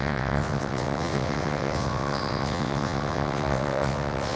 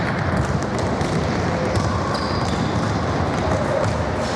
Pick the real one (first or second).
second